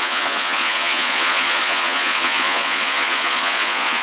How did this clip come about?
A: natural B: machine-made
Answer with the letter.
B